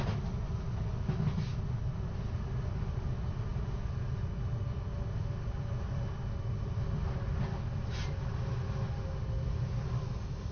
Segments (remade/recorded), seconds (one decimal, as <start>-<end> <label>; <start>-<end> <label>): 0.0-10.5 recorded